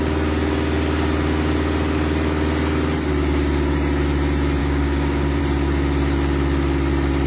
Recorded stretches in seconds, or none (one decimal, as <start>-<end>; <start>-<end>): 0.0-4.6; 5.4-7.3